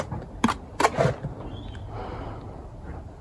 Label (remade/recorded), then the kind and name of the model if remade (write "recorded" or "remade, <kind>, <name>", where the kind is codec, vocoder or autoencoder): recorded